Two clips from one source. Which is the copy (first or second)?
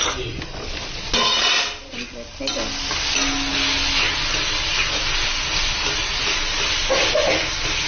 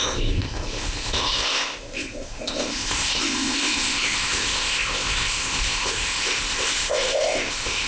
second